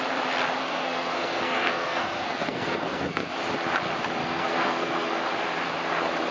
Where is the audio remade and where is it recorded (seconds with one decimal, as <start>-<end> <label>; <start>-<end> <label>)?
0.0-0.6 recorded; 0.6-3.3 remade; 3.3-4.2 recorded; 4.2-5.2 remade; 5.2-6.3 recorded